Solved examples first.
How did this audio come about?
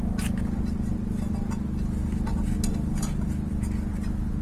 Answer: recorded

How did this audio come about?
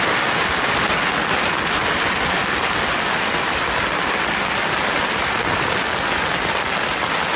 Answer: recorded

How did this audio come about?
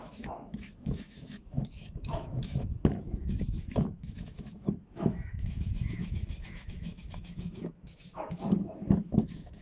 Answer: remade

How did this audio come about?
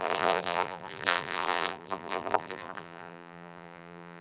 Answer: remade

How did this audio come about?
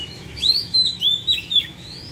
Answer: remade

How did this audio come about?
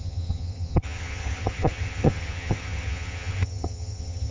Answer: remade